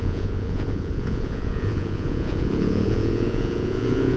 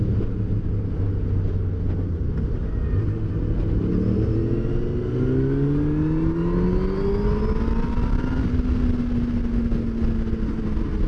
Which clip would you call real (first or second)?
second